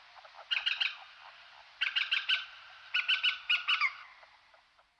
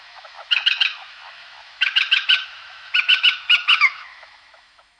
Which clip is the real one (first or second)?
first